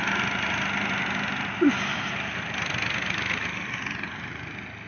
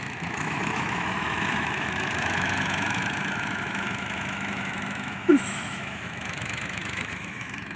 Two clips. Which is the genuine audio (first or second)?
first